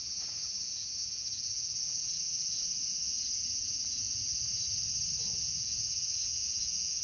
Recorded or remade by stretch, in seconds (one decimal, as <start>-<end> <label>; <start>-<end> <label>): 0.0-4.3 remade; 4.3-5.3 recorded; 5.3-7.0 remade